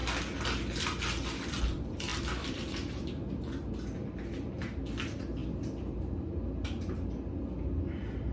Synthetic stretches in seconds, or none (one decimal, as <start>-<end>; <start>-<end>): 2.1-3.3; 5.4-6.0